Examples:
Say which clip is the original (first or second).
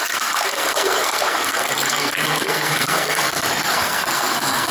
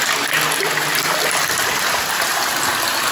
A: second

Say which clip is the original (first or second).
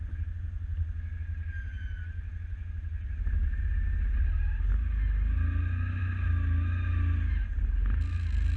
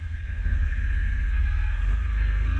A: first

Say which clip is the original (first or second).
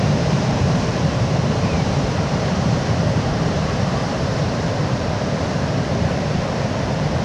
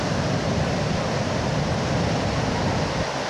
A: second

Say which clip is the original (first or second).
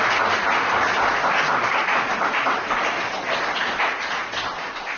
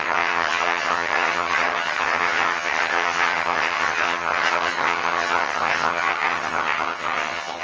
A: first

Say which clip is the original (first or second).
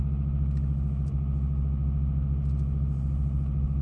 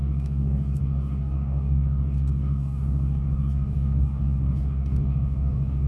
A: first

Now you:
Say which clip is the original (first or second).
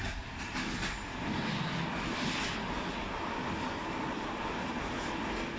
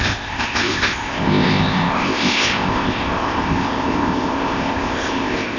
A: first